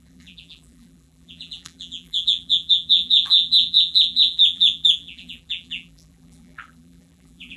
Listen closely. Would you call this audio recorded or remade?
remade